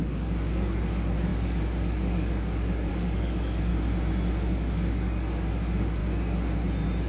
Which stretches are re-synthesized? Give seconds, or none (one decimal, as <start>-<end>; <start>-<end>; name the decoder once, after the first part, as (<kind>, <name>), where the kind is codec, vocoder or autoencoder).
0.0-3.7 (codec, DAC); 4.3-6.0